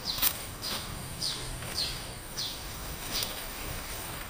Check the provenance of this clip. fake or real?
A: fake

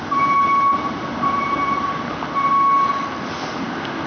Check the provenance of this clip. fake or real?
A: real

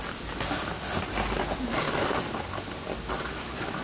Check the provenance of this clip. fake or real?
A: real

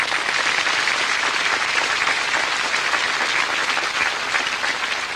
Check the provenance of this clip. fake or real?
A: real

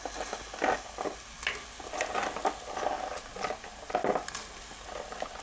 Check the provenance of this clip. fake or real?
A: real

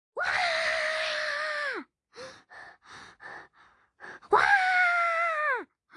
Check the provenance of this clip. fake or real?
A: real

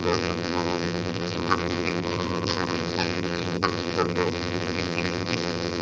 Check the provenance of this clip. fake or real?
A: fake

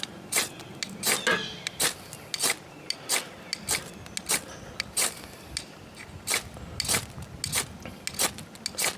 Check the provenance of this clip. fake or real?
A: real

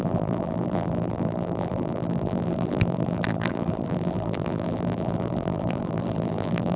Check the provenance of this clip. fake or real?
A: fake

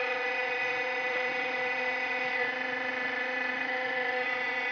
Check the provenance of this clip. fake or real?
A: fake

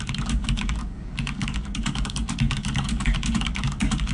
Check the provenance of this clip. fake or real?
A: fake